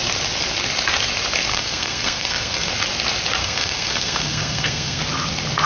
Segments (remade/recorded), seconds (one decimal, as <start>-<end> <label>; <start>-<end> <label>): 0.0-1.5 recorded; 1.5-2.7 remade; 2.7-3.4 recorded; 3.4-5.0 remade; 5.0-5.7 recorded